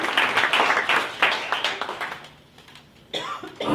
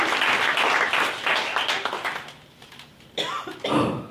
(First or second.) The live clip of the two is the first